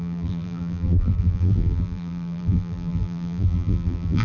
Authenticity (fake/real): fake